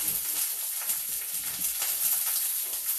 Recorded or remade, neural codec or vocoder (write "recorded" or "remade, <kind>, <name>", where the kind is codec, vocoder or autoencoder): recorded